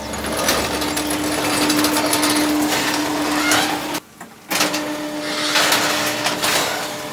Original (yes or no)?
yes